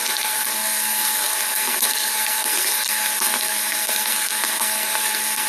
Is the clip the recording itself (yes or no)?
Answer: no